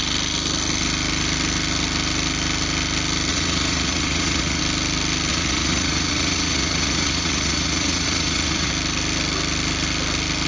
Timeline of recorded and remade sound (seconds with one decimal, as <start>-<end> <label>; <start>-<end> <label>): 0.0-3.3 recorded; 3.3-4.6 remade; 4.6-5.3 recorded; 5.3-8.7 remade; 8.7-10.5 recorded